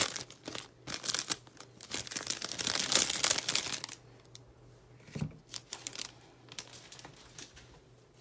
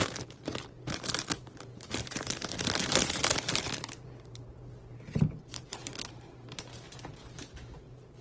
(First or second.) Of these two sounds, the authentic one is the first